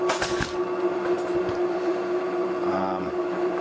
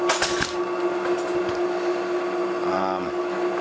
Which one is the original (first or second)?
second